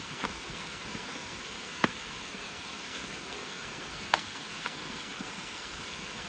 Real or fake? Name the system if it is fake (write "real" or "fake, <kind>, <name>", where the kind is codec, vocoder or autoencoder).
fake, codec, SNAC